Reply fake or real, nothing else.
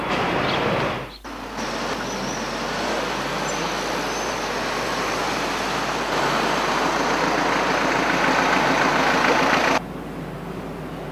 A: real